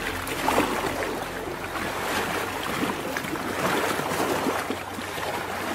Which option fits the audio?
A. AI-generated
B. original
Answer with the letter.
B